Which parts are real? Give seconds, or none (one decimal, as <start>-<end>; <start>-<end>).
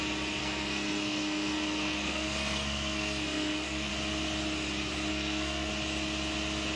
0.0-0.4; 3.9-5.1; 5.7-6.8